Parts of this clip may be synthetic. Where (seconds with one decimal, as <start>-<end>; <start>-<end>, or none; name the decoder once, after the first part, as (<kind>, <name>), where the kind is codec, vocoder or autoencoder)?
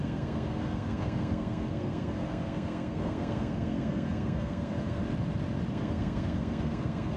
0.0-5.0 (codec, SNAC); 5.7-7.2